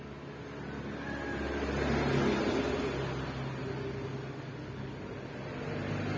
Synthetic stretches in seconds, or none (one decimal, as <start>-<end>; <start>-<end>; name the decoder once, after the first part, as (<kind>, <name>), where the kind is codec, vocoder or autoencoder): none